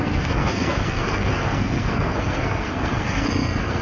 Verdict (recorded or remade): remade